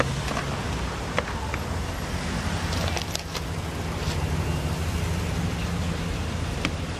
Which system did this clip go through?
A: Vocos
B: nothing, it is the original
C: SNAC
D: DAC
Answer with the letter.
B